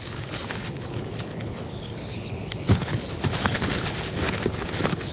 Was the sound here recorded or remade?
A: remade